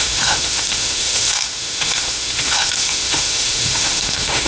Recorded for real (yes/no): no